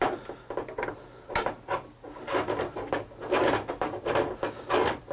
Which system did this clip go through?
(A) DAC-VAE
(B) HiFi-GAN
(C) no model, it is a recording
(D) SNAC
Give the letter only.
C